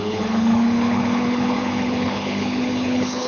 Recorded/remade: remade